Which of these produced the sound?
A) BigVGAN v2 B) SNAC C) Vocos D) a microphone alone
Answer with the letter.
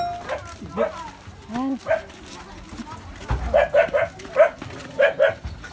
D